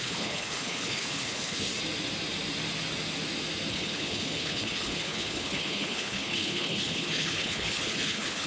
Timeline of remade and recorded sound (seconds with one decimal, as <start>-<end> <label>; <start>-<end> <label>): 0.0-1.7 remade; 1.7-3.7 recorded; 3.7-8.5 remade